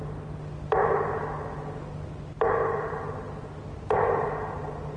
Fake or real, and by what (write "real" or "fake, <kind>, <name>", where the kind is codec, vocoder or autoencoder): real